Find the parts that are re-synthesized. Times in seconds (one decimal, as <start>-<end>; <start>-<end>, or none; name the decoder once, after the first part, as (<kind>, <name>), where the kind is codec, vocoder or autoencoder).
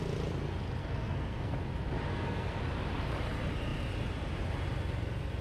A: 0.8-1.5 (codec, SNAC); 2.1-2.6